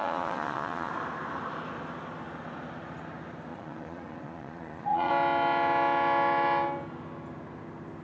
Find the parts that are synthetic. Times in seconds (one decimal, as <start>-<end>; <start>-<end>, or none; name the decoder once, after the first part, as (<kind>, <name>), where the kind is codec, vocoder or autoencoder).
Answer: 0.0-0.9 (vocoder, Vocos); 3.5-5.1